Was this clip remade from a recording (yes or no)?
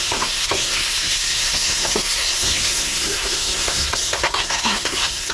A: yes